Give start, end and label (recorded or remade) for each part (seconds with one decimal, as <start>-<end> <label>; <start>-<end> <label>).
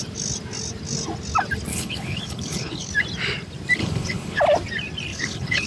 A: 0.0-1.7 recorded; 1.7-2.9 remade; 2.9-3.8 recorded; 3.8-4.4 remade; 4.4-5.1 recorded; 5.1-5.7 remade